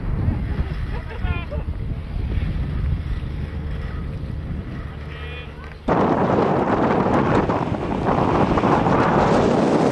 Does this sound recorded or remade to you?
recorded